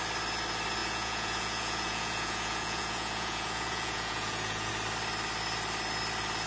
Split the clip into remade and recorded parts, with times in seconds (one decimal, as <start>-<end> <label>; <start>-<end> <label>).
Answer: 0.0-0.8 recorded; 0.8-4.7 remade; 4.7-6.5 recorded